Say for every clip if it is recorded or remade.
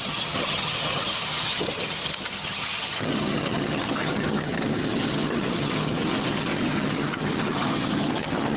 remade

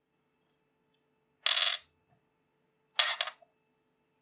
recorded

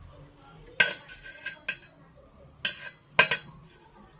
recorded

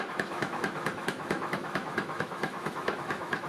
remade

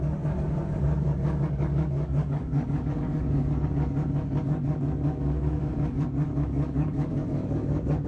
remade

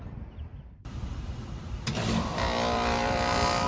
remade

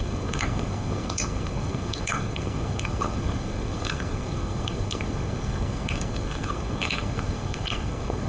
remade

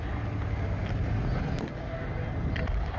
recorded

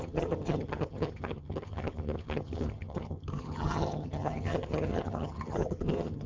remade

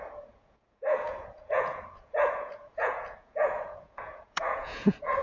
remade